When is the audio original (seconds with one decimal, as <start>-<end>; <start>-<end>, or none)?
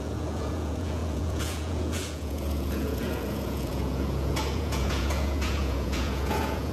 none